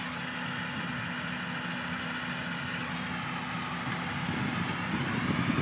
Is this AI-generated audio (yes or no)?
no